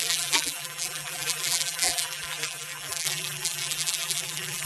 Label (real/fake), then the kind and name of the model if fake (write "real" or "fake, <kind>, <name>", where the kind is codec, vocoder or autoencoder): fake, vocoder, BigVGAN v2